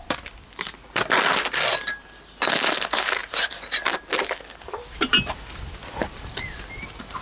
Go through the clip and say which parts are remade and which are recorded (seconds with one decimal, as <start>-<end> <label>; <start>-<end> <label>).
0.0-3.2 recorded; 3.2-4.1 remade; 4.1-7.2 recorded